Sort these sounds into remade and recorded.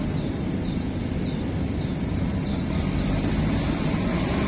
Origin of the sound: recorded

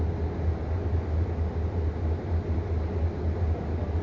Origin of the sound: recorded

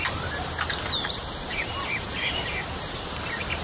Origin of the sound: remade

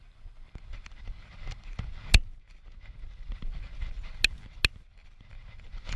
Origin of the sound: recorded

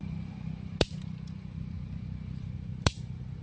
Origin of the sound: remade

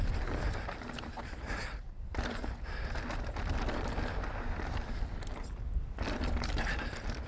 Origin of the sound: remade